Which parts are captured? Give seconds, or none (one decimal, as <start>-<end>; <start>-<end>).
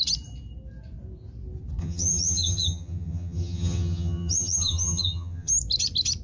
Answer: 0.0-1.8; 5.5-6.2